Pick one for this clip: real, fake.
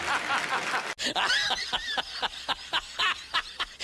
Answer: real